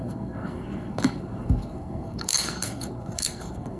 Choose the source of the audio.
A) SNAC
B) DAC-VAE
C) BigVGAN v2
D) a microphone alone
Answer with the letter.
A